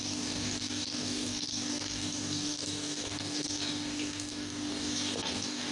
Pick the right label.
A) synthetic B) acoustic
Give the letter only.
A